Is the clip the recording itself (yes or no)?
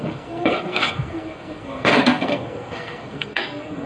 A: no